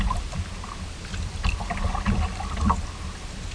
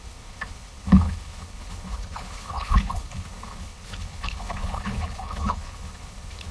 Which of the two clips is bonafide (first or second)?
first